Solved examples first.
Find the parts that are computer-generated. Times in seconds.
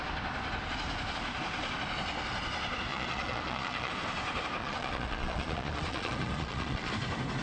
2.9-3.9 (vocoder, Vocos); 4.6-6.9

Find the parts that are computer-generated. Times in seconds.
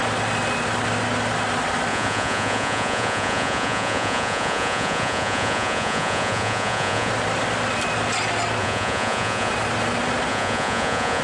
1.9-7.1 (vocoder, Vocos); 8.6-9.5; 10.3-11.2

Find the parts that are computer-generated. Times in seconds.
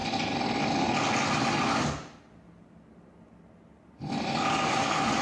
none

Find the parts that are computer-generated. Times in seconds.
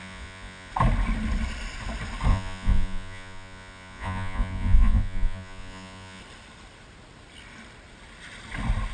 0.0-0.7 (vocoder, Vocos); 2.3-6.2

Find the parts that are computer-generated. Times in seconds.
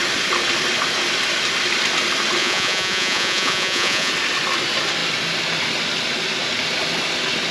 2.4-4.1 (vocoder, Vocos)